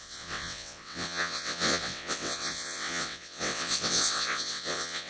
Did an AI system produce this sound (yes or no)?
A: yes